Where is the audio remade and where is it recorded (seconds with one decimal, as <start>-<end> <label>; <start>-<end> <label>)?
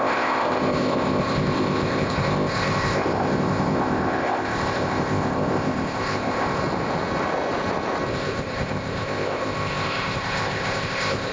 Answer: 0.0-6.6 remade; 6.6-8.1 recorded; 8.1-11.3 remade